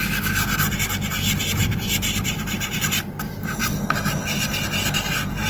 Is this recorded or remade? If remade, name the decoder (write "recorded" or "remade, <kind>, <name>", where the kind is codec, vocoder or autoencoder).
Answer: recorded